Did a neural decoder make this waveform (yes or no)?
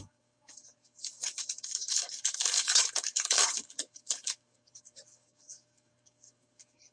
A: yes